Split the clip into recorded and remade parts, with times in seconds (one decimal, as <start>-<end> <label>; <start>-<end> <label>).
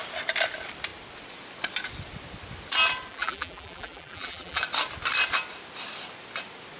0.0-3.1 recorded; 3.1-4.6 remade; 4.6-6.8 recorded